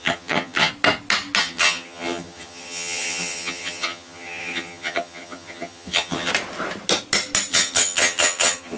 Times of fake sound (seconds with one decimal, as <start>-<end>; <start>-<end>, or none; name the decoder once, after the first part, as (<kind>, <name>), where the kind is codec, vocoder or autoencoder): 0.0-0.7 (vocoder, HiFi-GAN); 1.4-6.3; 7.5-8.8

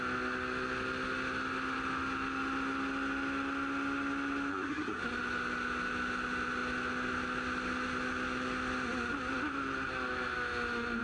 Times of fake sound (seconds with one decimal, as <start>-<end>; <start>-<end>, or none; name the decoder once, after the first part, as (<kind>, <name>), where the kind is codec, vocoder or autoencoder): 4.5-5.0 (codec, SNAC)

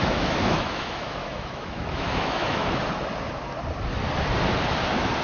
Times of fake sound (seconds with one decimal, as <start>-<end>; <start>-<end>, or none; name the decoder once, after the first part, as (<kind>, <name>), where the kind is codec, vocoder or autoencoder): 0.0-2.8 (autoencoder, DAC-VAE)

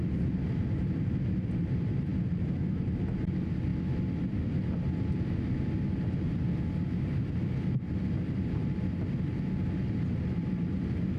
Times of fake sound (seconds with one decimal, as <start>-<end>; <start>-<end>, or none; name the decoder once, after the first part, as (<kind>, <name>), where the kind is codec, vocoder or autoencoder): none